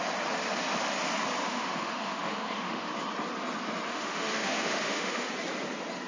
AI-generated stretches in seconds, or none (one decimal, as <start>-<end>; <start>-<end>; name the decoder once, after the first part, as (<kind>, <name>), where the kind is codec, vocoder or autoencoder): 1.4-2.9 (autoencoder, DAC-VAE); 3.9-5.3